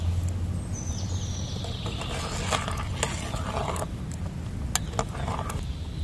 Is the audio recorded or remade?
recorded